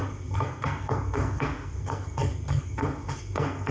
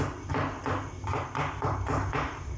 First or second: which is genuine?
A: second